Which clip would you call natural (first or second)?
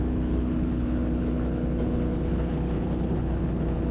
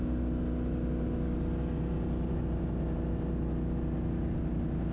second